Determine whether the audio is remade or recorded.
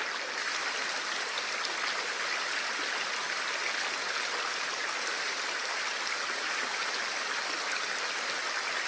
recorded